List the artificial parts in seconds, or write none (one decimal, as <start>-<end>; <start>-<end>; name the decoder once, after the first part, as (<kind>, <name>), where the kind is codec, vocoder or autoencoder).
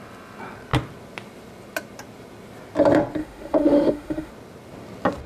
3.2-4.3 (autoencoder, DAC-VAE)